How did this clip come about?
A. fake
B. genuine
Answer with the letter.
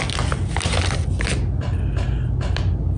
B